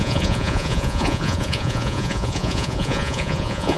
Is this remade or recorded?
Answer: remade